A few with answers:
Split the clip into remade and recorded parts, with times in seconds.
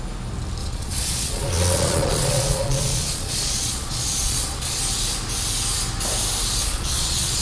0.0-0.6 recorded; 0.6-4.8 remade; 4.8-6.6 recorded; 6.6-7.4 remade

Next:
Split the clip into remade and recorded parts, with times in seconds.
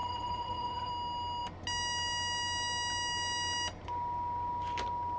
0.0-0.9 remade; 0.9-5.2 recorded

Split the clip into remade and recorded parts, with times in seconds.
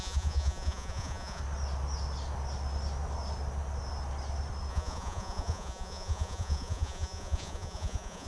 0.0-1.4 remade; 1.4-4.7 recorded; 4.7-8.3 remade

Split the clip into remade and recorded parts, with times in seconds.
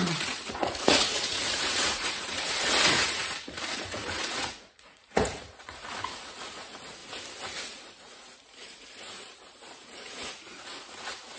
0.0-7.0 remade; 7.0-7.6 recorded; 7.6-11.4 remade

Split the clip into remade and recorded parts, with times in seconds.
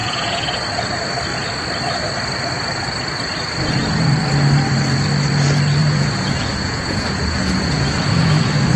0.0-0.6 remade; 0.6-5.8 recorded; 5.8-8.4 remade; 8.4-8.8 recorded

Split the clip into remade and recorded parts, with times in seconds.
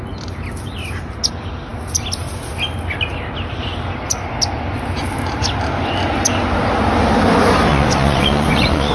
0.0-7.7 recorded; 7.7-8.9 remade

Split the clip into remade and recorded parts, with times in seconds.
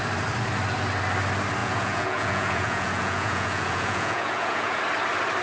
0.0-1.6 recorded; 1.6-4.8 remade; 4.8-5.4 recorded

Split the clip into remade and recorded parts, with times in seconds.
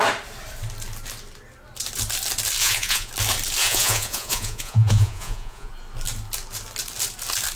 0.0-2.6 recorded; 2.6-3.1 remade; 3.1-3.6 recorded; 3.6-5.7 remade; 5.7-7.6 recorded